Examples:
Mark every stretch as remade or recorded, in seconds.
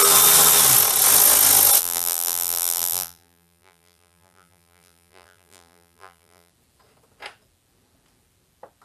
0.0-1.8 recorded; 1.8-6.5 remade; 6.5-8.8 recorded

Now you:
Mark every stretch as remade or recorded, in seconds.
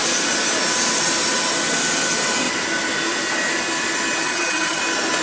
0.0-4.2 recorded; 4.2-4.8 remade; 4.8-5.2 recorded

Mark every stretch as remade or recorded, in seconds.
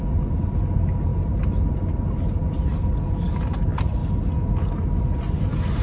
0.0-5.8 recorded